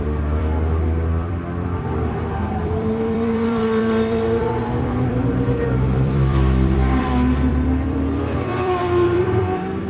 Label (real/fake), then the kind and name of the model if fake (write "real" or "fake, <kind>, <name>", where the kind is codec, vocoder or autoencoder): fake, vocoder, BigVGAN v2